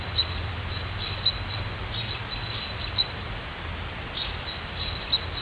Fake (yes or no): no